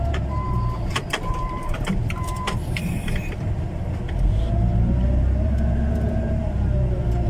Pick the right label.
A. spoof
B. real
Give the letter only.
A